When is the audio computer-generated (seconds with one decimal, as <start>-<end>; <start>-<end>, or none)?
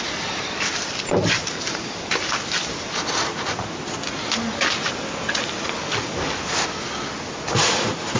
0.7-2.2